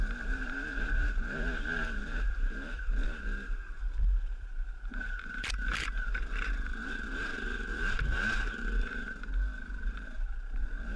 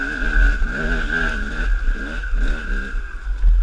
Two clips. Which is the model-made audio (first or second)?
first